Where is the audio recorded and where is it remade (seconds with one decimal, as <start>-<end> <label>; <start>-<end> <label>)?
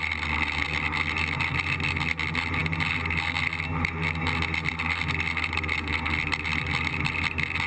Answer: 0.0-7.7 recorded